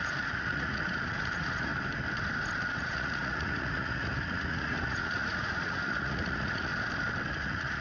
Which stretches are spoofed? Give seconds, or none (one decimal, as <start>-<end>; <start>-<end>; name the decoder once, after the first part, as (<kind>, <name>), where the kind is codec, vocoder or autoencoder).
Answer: 0.0-1.7 (vocoder, Vocos); 2.8-6.7; 7.3-7.8